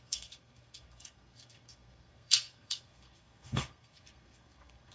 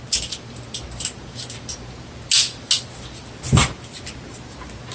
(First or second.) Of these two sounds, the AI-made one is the first